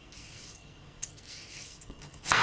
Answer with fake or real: fake